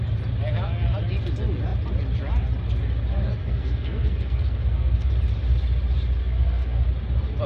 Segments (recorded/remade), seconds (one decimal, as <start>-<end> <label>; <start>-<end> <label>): 0.0-3.4 recorded; 3.4-5.1 remade; 5.1-6.2 recorded; 6.2-6.9 remade; 6.9-7.5 recorded